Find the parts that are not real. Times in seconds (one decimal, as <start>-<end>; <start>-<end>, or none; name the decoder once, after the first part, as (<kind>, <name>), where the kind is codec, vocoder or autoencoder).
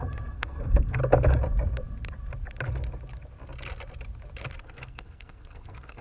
0.0-1.0 (codec, SNAC); 4.6-6.0